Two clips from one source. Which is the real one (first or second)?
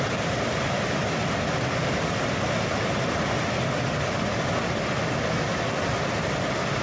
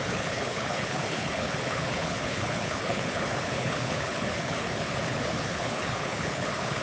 first